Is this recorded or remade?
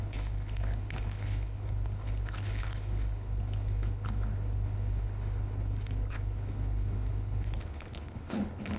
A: remade